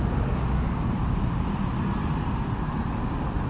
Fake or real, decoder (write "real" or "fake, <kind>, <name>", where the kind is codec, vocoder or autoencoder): real